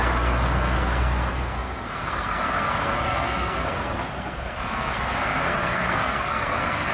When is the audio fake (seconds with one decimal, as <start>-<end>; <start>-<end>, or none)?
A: 0.0-6.9